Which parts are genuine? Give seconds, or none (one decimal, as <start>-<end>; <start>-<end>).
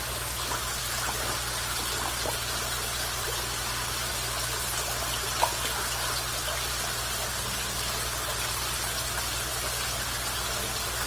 0.0-11.1